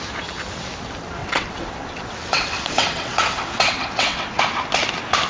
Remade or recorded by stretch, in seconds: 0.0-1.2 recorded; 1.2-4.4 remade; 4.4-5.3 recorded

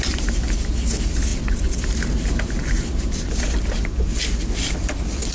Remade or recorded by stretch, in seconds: 0.0-1.3 recorded; 1.3-4.2 remade; 4.2-5.3 recorded

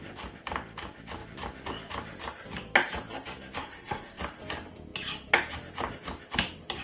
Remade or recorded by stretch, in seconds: 0.0-3.6 recorded; 3.6-4.2 remade; 4.2-6.8 recorded

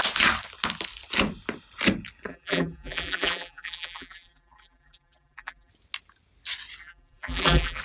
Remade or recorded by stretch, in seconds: 0.0-2.3 recorded; 2.3-5.7 remade; 5.7-6.8 recorded; 6.8-7.8 remade

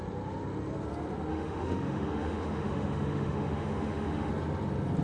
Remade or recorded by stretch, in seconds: 0.0-1.3 recorded; 1.3-4.3 remade; 4.3-5.0 recorded

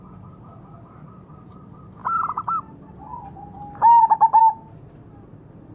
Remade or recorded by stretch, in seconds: 0.0-5.7 recorded

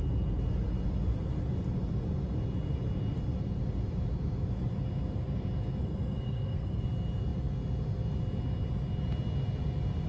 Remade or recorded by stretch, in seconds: 0.0-5.8 recorded; 5.8-6.8 remade; 6.8-10.1 recorded